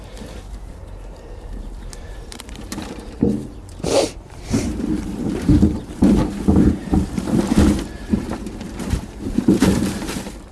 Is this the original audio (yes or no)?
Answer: no